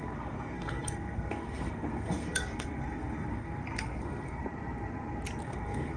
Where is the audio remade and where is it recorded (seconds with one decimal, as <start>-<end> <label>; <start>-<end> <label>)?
0.0-4.4 remade; 4.4-5.4 recorded; 5.4-6.0 remade